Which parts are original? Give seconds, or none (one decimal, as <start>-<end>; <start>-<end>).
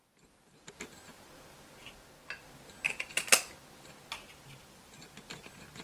0.0-5.8